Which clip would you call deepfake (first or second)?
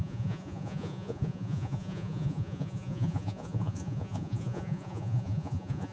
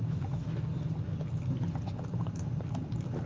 first